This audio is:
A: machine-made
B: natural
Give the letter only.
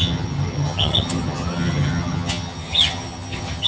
A